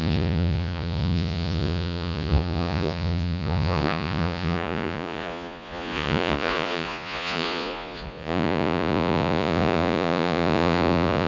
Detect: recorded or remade remade